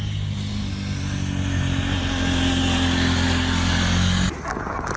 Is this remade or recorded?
recorded